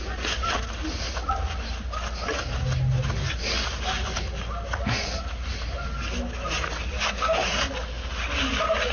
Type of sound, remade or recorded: recorded